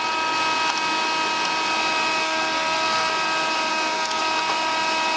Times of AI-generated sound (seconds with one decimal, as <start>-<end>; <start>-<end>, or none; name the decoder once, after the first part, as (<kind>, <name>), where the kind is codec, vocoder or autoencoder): 2.2-3.1 (codec, SNAC); 3.7-4.2